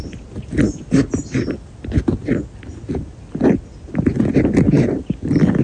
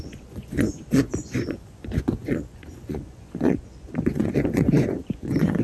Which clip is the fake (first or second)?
second